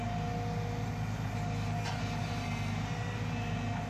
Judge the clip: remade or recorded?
recorded